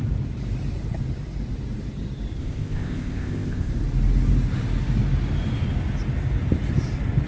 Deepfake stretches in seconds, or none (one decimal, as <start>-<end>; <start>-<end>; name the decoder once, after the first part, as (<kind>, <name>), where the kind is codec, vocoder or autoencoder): 2.4-3.7 (codec, ZipCodec)